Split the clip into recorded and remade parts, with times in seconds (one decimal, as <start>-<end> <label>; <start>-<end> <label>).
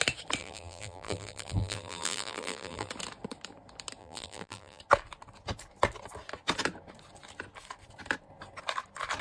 0.0-0.4 recorded; 0.4-2.9 remade; 2.9-4.0 recorded; 4.0-4.8 remade; 4.8-9.2 recorded